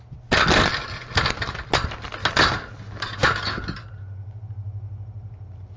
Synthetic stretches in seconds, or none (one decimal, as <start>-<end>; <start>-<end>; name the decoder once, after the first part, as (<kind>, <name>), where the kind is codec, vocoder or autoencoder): none